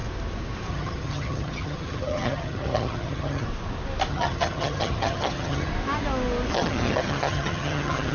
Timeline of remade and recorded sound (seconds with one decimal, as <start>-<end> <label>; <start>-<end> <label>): 0.0-0.7 recorded; 0.7-3.5 remade; 3.5-4.1 recorded; 4.1-5.7 remade; 5.7-6.5 recorded; 6.5-8.1 remade